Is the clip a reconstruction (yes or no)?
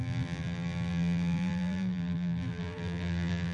yes